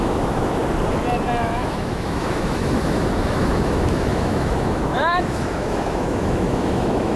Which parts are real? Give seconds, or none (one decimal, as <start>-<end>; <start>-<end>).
0.6-1.4